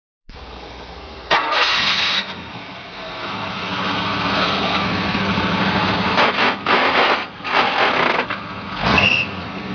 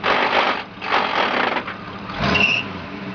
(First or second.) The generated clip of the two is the first